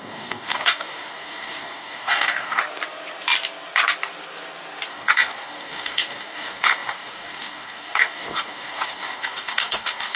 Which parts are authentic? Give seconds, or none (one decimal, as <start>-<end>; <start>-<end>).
2.6-4.9